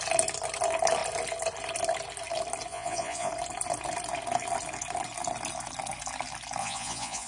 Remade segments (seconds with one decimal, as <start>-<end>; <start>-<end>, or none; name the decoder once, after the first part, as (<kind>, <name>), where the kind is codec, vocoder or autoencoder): 2.7-3.3 (vocoder, Vocos); 6.6-7.3